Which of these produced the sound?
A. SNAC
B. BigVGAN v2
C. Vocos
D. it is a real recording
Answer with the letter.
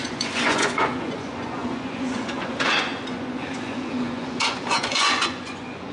C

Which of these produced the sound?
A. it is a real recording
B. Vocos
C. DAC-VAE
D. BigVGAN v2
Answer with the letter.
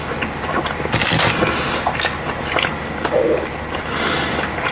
A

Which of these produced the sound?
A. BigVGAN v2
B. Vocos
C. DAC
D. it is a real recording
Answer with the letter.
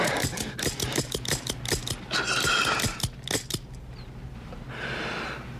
D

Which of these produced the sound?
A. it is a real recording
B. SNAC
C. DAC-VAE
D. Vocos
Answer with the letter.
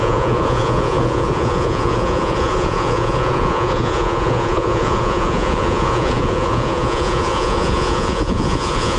D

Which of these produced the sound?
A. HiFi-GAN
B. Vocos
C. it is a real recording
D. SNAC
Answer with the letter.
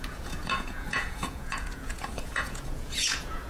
B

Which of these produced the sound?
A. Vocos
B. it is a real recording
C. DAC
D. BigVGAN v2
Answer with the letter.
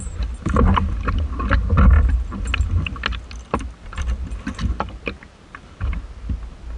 B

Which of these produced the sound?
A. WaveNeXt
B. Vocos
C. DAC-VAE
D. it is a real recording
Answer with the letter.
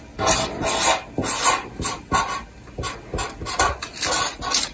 D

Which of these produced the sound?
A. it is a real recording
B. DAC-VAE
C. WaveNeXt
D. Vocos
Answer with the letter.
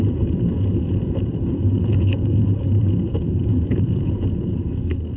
D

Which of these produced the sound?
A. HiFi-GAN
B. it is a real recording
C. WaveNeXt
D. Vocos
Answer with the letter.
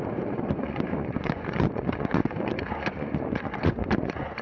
D